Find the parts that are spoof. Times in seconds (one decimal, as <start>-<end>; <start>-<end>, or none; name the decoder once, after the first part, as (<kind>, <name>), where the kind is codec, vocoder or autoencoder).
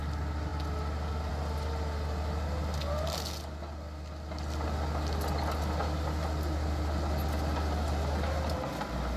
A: none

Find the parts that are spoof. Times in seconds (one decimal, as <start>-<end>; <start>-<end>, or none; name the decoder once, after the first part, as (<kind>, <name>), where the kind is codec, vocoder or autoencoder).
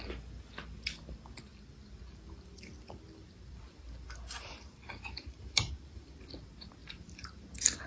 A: 1.5-6.2 (vocoder, BigVGAN v2); 6.8-7.9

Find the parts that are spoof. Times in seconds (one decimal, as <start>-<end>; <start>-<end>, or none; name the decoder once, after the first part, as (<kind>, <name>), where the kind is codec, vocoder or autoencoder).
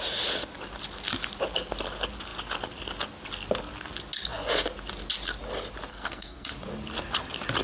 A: 5.9-6.5 (codec, SNAC)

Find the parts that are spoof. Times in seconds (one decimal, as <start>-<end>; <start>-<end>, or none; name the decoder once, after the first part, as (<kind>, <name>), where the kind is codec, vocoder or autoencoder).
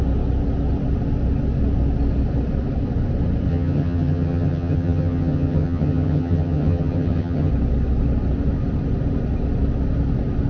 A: 3.5-7.5 (vocoder, HiFi-GAN)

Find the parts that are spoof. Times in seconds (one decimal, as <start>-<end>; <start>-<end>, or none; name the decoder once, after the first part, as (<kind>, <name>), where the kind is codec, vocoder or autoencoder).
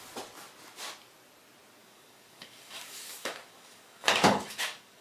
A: 1.8-5.0 (codec, DAC)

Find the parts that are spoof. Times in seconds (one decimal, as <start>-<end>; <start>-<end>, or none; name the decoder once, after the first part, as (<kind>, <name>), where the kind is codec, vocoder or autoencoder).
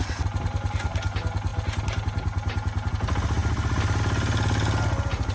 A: none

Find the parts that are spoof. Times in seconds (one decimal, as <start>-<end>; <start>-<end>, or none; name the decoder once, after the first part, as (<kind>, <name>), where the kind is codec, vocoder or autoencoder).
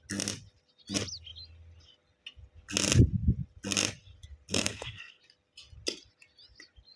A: 4.5-5.2 (codec, SNAC)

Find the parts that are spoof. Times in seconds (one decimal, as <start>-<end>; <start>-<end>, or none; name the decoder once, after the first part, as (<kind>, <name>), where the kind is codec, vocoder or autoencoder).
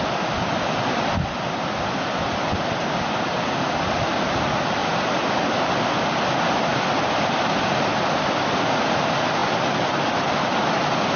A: 6.7-8.2 (vocoder, BigVGAN v2)